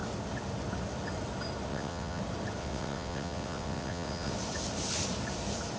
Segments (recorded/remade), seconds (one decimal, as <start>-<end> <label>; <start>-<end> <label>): 0.0-1.7 recorded; 1.7-2.2 remade; 2.2-2.6 recorded; 2.6-4.3 remade; 4.3-5.8 recorded